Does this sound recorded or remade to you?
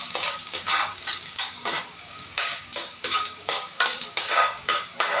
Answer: remade